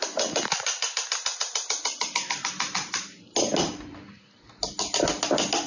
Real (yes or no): yes